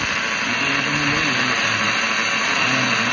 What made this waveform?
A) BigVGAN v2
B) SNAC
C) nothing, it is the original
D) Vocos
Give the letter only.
C